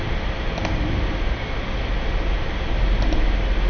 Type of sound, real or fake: real